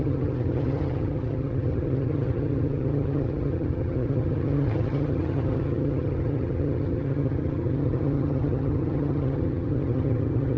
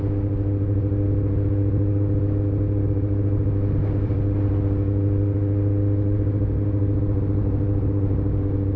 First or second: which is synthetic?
first